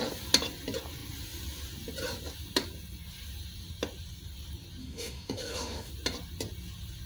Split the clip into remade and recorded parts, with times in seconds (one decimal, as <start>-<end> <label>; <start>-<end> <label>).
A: 0.0-4.8 recorded; 4.8-5.9 remade; 5.9-7.1 recorded